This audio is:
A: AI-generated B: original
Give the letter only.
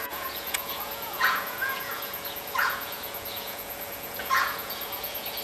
A